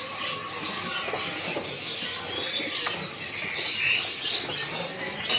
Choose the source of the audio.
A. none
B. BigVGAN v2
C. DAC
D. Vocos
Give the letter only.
A